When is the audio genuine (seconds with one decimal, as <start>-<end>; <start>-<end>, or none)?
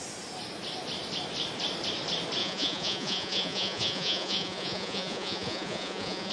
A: 0.0-2.4